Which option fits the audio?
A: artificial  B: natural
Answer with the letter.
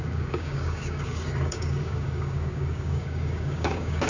A